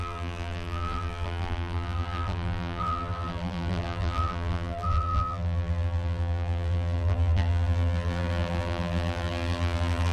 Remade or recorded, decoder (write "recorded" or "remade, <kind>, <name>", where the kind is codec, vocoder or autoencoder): remade, vocoder, BigVGAN v2